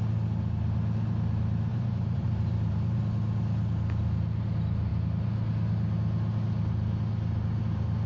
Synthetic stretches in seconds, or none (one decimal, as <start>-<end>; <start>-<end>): 1.7-3.0